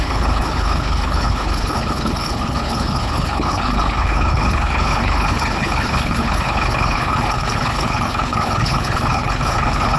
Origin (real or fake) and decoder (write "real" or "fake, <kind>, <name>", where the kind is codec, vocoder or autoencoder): fake, codec, HILCodec